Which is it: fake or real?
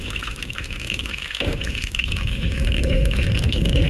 fake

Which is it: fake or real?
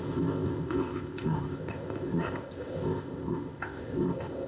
fake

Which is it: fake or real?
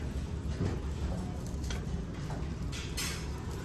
real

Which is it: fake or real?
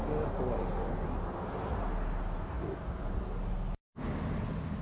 real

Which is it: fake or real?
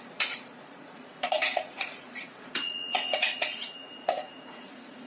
fake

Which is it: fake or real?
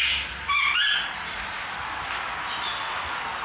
real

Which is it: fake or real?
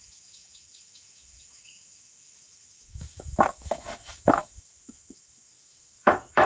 fake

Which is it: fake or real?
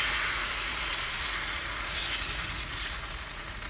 fake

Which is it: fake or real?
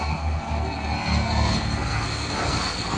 fake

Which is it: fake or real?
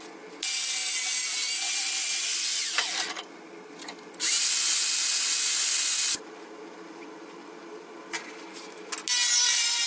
real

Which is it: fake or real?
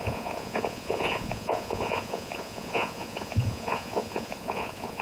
fake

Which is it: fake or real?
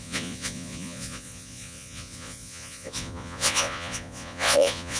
fake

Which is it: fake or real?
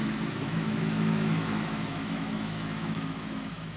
fake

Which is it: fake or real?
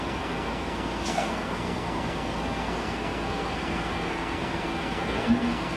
fake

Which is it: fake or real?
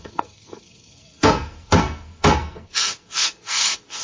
fake